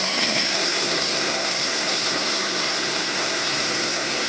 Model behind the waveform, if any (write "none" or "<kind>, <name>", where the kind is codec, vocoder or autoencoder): codec, SNAC